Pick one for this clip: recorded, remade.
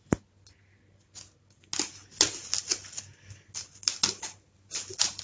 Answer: recorded